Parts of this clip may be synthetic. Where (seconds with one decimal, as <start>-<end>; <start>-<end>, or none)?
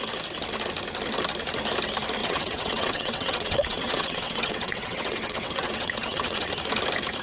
2.2-6.5